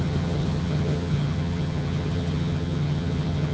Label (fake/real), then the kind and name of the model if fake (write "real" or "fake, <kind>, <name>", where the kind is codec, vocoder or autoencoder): fake, vocoder, HiFi-GAN